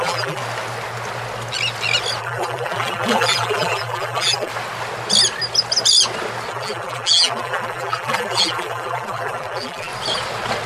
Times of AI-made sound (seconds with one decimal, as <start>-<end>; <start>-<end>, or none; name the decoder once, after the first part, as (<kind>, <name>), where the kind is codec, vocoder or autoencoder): 0.0-0.4 (vocoder, BigVGAN v2); 2.2-4.5; 6.5-9.9